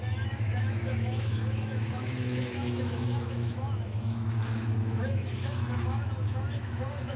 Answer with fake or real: fake